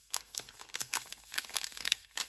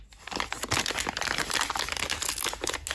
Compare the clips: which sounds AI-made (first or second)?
first